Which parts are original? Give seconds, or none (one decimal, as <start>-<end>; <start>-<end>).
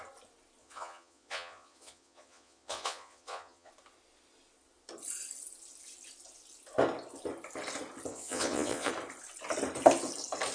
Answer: 0.0-0.6; 3.7-8.1; 8.9-10.5